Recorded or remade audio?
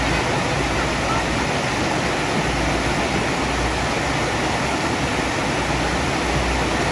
recorded